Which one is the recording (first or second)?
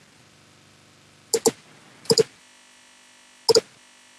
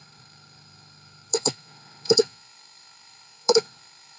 first